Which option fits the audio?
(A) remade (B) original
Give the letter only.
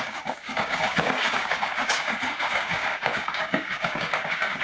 A